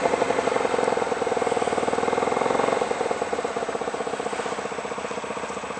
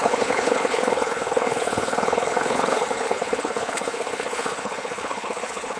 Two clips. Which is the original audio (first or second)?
first